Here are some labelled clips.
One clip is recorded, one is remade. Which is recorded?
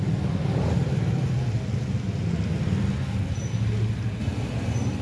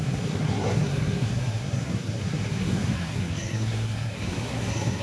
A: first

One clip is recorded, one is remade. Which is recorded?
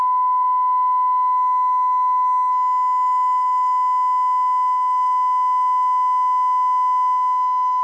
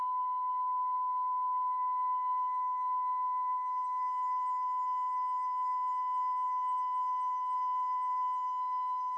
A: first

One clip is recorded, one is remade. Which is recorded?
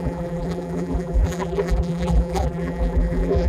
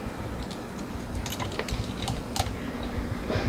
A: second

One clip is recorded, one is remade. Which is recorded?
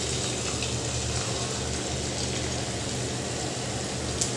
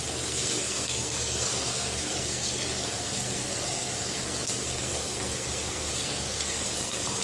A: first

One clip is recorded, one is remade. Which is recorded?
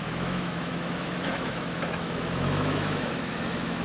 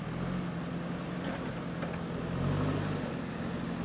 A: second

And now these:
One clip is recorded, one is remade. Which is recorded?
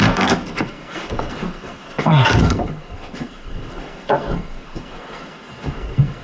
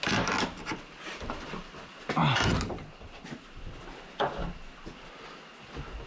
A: second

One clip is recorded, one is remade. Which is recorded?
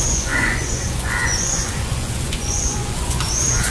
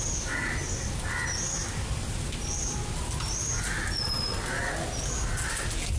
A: second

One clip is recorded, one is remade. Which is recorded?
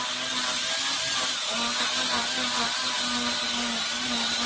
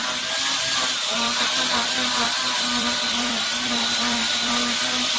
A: first